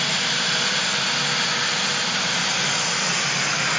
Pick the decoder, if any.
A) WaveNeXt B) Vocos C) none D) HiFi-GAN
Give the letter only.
C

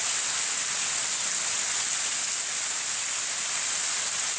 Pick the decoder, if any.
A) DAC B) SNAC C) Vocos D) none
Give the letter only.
D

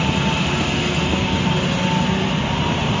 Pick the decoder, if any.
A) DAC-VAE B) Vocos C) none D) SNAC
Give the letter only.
C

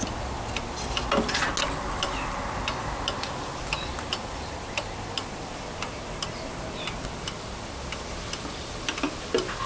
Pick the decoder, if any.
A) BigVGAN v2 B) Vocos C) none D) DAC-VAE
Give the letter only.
C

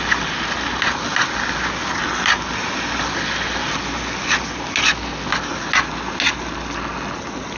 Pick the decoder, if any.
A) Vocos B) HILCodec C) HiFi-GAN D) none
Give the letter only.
D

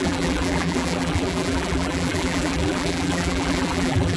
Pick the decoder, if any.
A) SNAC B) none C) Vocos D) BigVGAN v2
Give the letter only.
D